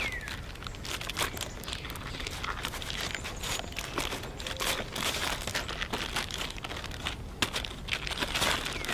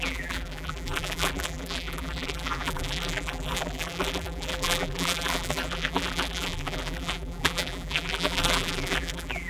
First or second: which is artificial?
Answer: second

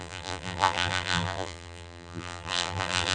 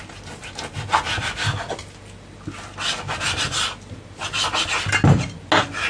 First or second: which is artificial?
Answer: first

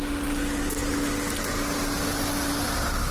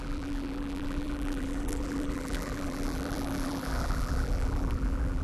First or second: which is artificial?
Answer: second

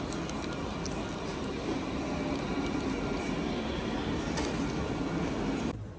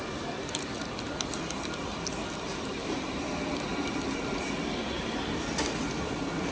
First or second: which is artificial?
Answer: second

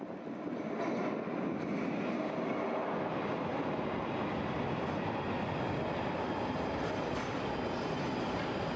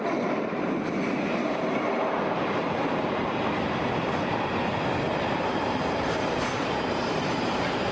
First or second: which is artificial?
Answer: second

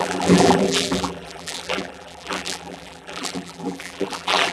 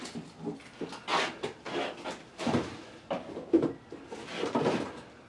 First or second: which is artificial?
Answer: first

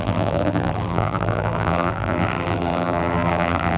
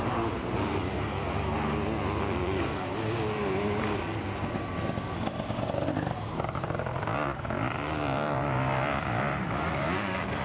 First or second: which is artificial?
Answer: first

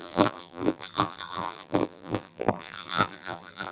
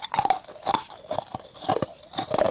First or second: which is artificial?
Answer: first